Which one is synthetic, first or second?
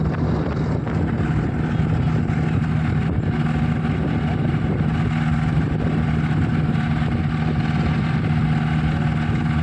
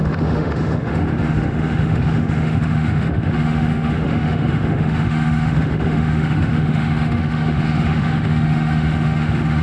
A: second